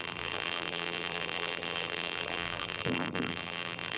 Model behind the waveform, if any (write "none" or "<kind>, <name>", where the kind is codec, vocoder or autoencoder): vocoder, BigVGAN v2